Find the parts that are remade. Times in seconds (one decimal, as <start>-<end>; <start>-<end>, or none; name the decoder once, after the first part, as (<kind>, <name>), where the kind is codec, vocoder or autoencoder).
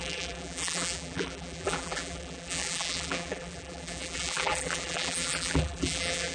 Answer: 0.0-6.3 (vocoder, BigVGAN v2)